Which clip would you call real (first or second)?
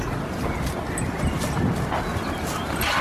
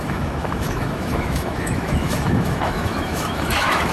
first